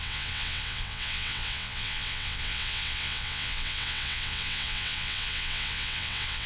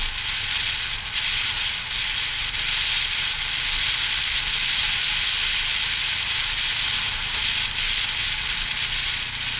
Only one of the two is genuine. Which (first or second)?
second